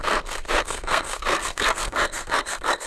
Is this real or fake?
fake